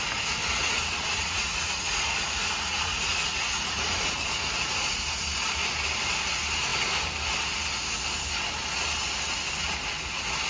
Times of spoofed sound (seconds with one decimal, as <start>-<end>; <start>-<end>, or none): 0.4-5.0